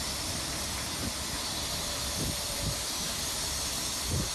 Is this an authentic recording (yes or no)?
no